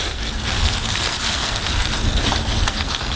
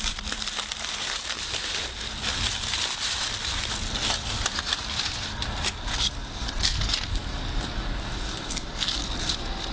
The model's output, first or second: first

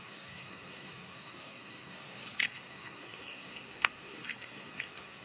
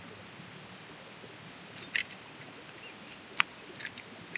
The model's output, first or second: first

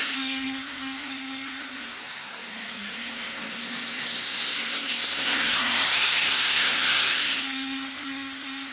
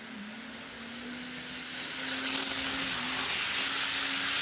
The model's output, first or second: first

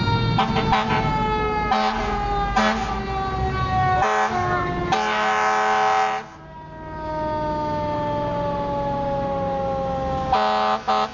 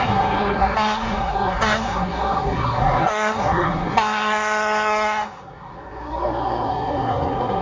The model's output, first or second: second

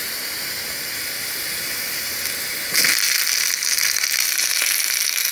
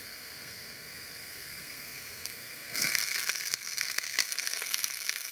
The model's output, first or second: second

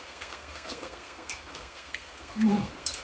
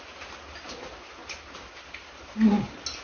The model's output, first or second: first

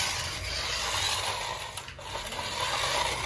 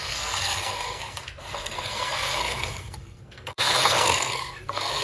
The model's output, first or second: second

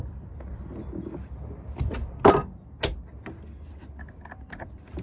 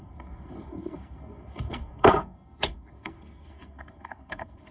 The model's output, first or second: second